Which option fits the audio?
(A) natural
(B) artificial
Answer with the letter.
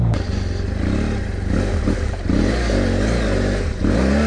A